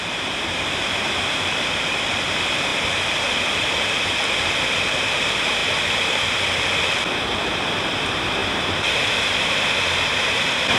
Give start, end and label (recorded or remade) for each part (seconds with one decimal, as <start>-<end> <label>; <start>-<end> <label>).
0.0-2.7 remade; 2.7-4.3 recorded; 4.3-5.6 remade; 5.6-7.5 recorded; 7.5-10.8 remade